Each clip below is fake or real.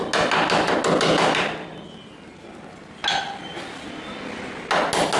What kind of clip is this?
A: real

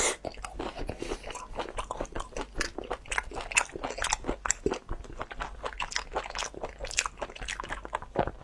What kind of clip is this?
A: real